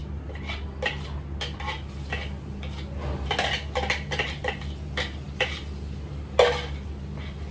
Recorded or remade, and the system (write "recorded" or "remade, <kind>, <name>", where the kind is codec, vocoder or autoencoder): recorded